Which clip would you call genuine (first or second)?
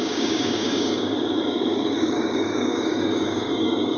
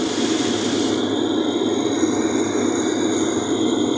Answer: second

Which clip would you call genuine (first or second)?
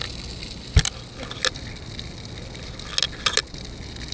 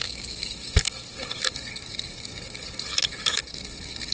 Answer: first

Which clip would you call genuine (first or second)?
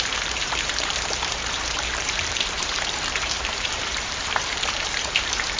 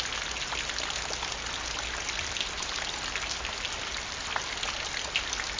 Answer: second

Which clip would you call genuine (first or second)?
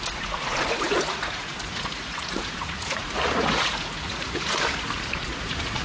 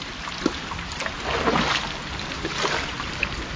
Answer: second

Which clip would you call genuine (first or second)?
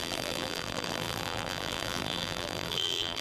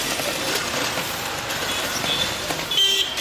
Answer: second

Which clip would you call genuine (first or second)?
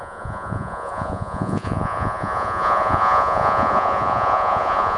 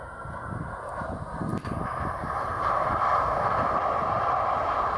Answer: second